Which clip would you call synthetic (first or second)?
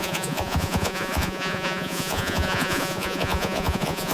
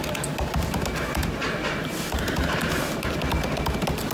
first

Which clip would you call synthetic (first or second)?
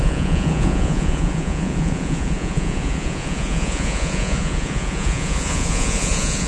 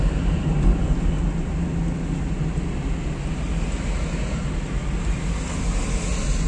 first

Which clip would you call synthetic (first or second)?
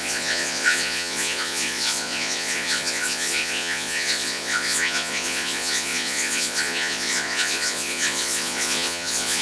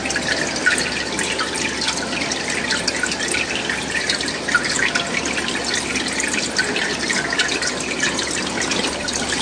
first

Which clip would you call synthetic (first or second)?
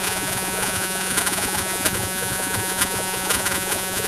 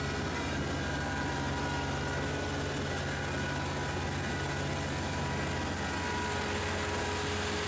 first